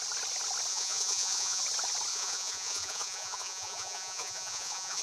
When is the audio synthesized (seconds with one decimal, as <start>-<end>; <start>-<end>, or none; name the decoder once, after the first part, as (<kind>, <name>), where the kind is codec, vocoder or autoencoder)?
0.7-1.6 (vocoder, Vocos); 2.1-5.0